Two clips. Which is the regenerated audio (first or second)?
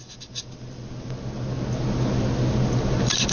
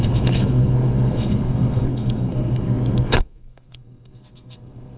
second